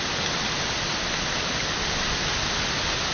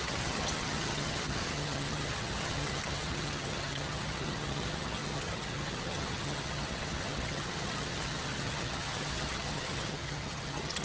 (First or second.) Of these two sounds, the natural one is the first